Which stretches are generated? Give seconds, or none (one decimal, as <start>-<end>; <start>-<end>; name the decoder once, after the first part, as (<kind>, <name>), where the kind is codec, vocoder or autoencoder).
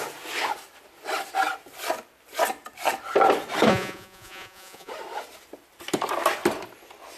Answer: 3.7-4.9 (vocoder, Vocos)